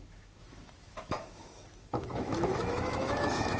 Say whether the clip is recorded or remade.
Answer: remade